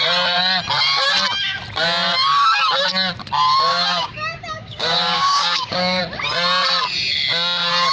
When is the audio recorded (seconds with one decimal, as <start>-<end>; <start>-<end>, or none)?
0.0-3.7; 6.0-7.9